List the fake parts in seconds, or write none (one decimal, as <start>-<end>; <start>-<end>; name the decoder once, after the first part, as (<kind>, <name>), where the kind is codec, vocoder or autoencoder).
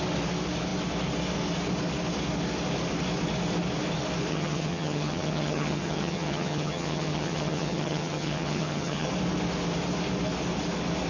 4.3-9.1 (vocoder, HiFi-GAN)